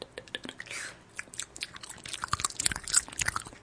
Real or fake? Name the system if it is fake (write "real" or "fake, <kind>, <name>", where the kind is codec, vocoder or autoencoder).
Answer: real